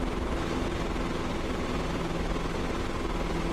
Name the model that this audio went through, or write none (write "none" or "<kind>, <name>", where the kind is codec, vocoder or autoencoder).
none